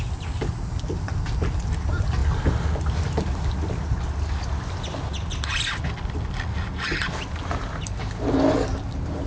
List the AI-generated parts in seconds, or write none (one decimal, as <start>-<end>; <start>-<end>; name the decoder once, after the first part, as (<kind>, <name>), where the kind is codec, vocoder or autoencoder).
none

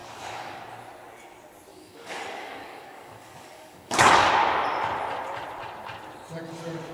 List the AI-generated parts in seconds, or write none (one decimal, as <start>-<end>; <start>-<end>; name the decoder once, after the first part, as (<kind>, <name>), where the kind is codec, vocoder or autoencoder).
0.0-0.6 (codec, DAC); 1.7-4.3

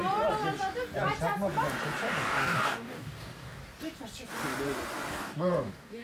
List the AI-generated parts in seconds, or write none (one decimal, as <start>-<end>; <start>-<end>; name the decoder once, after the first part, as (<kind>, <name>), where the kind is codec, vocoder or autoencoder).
2.1-3.6 (codec, DAC); 5.1-6.0

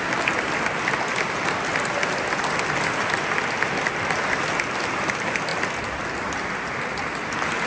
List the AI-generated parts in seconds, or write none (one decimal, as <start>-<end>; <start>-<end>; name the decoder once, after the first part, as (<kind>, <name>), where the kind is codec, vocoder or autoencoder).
none

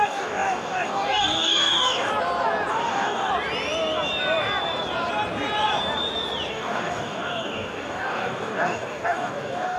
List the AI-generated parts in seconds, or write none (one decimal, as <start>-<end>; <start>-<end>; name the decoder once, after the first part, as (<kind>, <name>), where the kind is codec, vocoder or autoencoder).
0.0-2.1 (codec, DAC); 2.7-3.3; 6.5-9.8